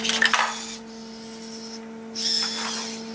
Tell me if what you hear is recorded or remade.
recorded